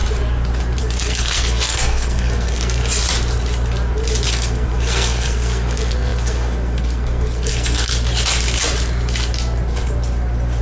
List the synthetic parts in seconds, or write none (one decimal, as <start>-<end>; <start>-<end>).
0.8-2.8; 4.3-7.9